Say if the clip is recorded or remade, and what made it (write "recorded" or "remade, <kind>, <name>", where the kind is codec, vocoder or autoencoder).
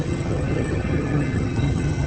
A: remade, vocoder, HiFi-GAN